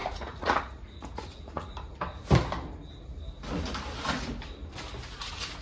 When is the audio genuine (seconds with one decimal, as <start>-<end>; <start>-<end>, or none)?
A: 1.7-5.1